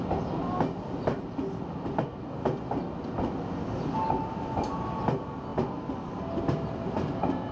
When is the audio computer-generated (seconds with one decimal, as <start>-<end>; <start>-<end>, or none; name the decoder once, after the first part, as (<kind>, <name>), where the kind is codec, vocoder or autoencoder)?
none